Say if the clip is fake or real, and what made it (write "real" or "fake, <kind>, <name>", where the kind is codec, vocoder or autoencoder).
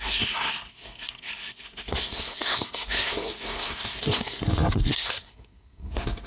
fake, codec, SNAC